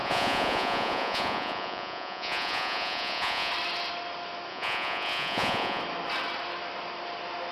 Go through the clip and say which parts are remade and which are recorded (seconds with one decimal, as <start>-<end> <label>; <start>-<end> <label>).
0.0-3.5 remade; 3.5-4.5 recorded; 4.5-5.8 remade; 5.8-7.5 recorded